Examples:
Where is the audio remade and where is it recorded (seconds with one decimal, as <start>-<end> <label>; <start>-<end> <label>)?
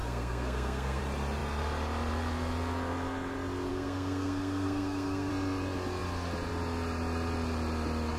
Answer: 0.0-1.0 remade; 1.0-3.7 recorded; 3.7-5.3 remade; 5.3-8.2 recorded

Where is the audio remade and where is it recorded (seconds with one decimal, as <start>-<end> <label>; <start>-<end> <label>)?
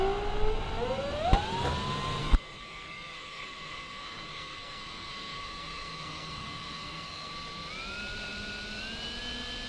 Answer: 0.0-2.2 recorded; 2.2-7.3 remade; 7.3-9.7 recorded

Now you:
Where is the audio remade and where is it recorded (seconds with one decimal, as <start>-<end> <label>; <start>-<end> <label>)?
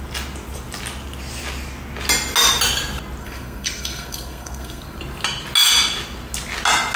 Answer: 0.0-3.2 recorded; 3.2-5.0 remade; 5.0-7.0 recorded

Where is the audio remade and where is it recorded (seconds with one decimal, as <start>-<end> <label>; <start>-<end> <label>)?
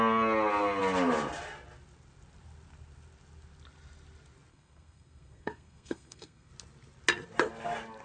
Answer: 0.0-4.5 recorded; 4.5-6.5 remade; 6.5-8.0 recorded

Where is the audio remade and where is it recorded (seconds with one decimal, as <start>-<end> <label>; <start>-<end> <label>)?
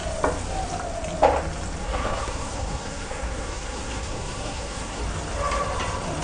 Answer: 0.0-1.8 recorded; 1.8-5.0 remade; 5.0-6.2 recorded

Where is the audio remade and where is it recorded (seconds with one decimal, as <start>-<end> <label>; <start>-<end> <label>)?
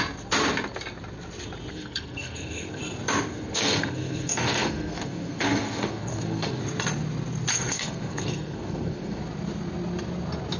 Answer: 0.0-1.7 recorded; 1.7-2.8 remade; 2.8-3.3 recorded; 3.3-6.6 remade; 6.6-7.5 recorded; 7.5-9.2 remade; 9.2-10.6 recorded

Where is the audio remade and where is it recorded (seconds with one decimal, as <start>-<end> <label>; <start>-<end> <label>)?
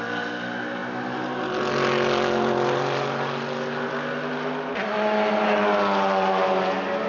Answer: 0.0-7.1 recorded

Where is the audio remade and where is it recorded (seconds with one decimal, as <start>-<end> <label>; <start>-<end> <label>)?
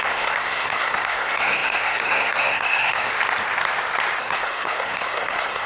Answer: 0.0-3.1 remade; 3.1-4.2 recorded; 4.2-5.7 remade